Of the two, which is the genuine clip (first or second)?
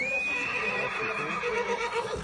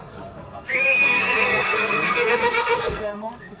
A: first